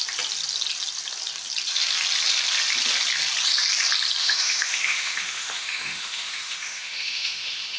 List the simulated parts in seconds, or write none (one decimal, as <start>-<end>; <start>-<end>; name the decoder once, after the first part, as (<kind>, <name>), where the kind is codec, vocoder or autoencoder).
4.2-7.8 (autoencoder, DAC-VAE)